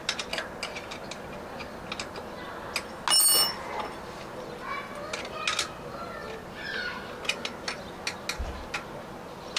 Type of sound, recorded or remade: recorded